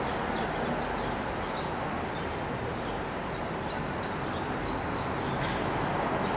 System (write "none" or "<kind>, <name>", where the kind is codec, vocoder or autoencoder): none